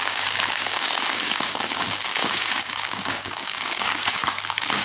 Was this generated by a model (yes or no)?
yes